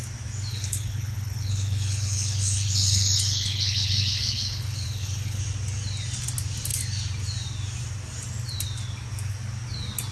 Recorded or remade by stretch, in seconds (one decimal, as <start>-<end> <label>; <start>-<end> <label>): 0.0-0.5 recorded; 0.5-5.4 remade; 5.4-10.1 recorded